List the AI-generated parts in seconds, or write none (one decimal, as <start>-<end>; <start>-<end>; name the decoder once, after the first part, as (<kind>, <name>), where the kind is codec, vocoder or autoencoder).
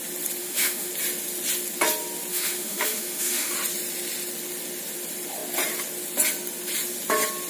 0.4-0.9 (autoencoder, DAC-VAE); 2.3-3.5